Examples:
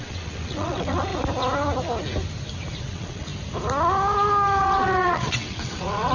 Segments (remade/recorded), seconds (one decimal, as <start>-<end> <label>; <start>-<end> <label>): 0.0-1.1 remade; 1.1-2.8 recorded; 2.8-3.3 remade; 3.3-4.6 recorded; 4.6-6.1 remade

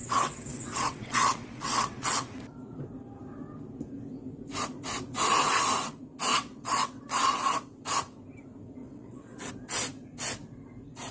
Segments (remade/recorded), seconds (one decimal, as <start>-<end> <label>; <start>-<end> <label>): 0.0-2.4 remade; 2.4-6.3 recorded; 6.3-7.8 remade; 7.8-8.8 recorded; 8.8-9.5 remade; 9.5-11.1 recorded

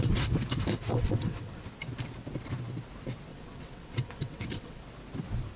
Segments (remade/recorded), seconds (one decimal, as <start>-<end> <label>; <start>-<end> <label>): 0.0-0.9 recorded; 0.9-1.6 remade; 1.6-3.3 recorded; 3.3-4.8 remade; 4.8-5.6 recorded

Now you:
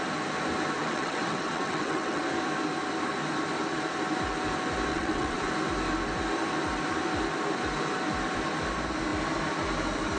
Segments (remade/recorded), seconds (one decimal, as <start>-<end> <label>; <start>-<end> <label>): 0.0-0.8 recorded; 0.8-2.2 remade; 2.2-4.9 recorded; 4.9-5.4 remade; 5.4-10.2 recorded

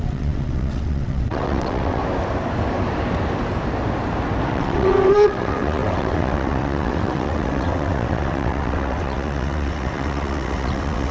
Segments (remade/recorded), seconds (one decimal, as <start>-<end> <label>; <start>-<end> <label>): 0.0-2.0 remade; 2.0-4.5 recorded; 4.5-11.1 remade

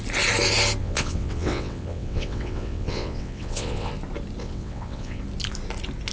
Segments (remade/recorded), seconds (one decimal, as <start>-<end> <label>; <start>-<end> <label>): 0.0-0.8 recorded; 0.8-3.9 remade; 3.9-4.4 recorded; 4.4-5.2 remade; 5.2-6.1 recorded

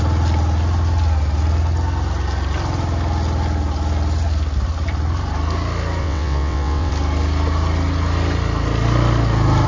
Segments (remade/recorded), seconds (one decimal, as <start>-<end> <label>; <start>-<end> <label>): 0.0-6.0 recorded; 6.0-6.9 remade; 6.9-9.7 recorded